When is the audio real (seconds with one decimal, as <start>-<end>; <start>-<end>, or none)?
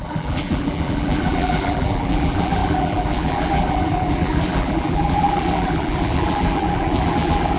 none